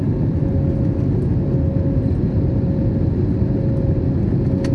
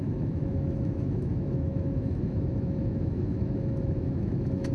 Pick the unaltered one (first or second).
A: first